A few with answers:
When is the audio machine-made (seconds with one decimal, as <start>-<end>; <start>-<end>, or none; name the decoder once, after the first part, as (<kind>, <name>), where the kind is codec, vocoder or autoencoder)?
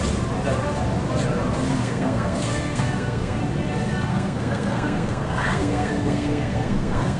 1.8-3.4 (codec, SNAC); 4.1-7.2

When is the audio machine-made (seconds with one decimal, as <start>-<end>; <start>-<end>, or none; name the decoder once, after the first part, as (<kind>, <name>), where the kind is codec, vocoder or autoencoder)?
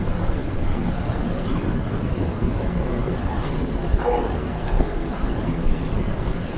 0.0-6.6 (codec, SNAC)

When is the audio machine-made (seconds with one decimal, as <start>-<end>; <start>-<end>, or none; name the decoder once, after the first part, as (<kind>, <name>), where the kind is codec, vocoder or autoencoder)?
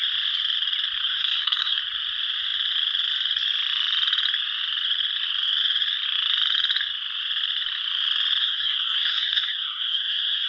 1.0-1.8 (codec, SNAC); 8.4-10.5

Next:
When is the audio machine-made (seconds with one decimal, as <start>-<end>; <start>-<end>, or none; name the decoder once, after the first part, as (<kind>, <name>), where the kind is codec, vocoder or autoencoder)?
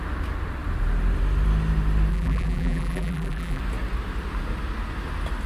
2.1-3.6 (vocoder, BigVGAN v2)